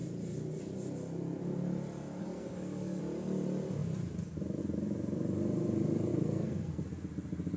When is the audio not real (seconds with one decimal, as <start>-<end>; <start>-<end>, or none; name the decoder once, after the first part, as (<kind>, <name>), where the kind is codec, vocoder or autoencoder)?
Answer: 2.2-3.0 (codec, SNAC); 6.1-6.8